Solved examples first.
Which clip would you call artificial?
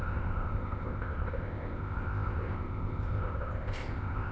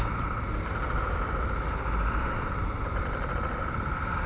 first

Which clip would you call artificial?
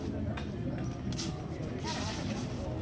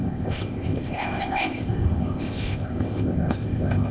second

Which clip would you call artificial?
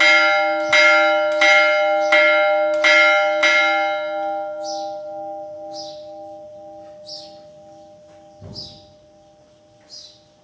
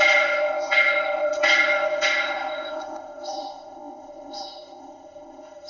second